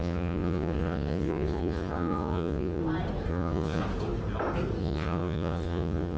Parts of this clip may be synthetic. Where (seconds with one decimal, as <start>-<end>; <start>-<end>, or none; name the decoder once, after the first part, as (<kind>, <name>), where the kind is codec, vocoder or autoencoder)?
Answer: 0.0-2.8 (vocoder, Vocos); 3.3-3.8; 4.8-6.2